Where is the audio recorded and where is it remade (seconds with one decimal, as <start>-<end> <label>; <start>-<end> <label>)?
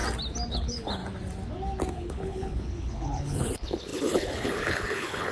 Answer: 0.0-0.5 recorded; 0.5-1.0 remade; 1.0-1.9 recorded; 1.9-5.3 remade